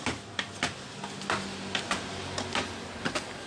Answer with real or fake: real